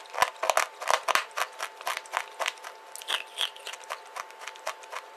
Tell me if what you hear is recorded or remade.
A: recorded